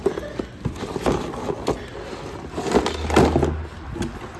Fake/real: real